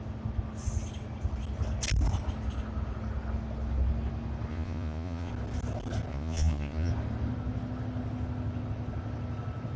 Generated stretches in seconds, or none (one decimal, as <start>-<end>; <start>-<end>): 4.5-5.3; 6.1-6.9